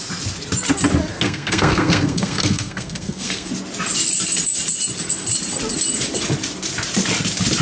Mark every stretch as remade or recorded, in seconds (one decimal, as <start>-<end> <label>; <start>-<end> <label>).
0.0-1.1 recorded; 1.1-3.5 remade; 3.5-7.6 recorded